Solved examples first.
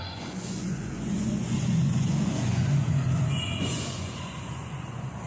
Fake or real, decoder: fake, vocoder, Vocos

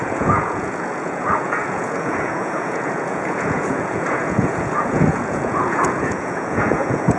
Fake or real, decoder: fake, vocoder, Vocos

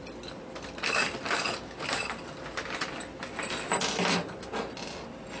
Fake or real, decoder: real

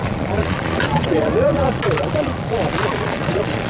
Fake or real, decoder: fake, vocoder, Vocos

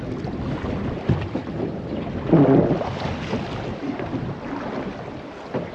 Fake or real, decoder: real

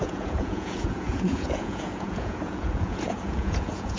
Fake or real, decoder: fake, vocoder, Vocos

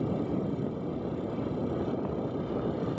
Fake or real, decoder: real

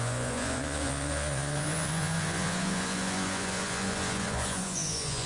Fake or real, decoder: fake, vocoder, Vocos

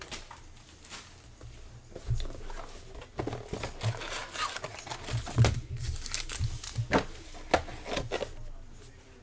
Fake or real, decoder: real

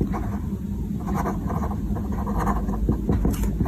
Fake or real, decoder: real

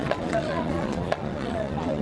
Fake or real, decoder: fake, vocoder, Vocos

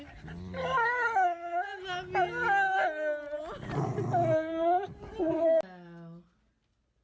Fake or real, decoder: real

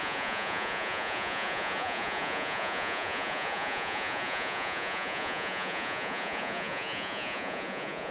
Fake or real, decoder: fake, vocoder, Vocos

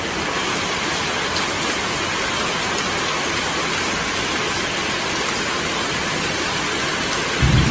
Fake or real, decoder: real